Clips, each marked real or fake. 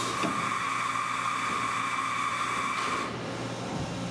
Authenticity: real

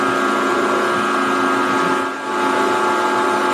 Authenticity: real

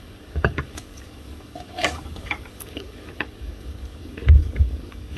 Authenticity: fake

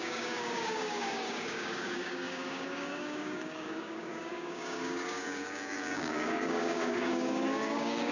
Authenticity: fake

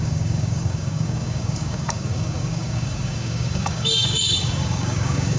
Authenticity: fake